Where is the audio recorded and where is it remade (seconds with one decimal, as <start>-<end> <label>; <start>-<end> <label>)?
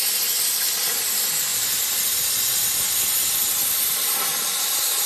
0.0-1.5 remade; 1.5-4.6 recorded; 4.6-5.1 remade